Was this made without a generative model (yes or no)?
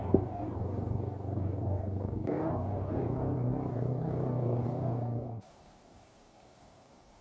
no